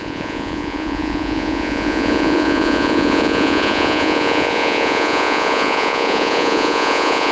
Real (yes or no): no